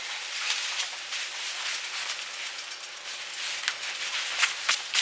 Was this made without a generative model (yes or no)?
yes